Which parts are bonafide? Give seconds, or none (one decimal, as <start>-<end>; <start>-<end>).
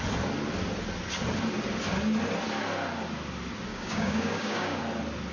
0.0-3.7; 4.8-5.3